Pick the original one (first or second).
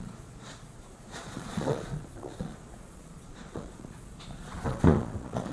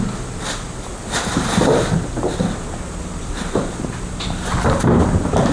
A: second